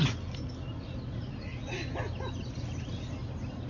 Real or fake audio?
real